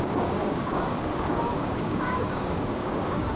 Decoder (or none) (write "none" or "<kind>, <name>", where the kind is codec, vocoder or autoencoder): codec, DAC